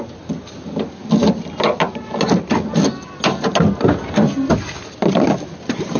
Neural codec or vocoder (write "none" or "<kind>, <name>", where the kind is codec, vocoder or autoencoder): none